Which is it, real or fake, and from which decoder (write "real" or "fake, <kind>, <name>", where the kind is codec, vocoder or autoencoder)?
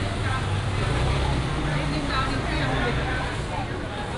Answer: real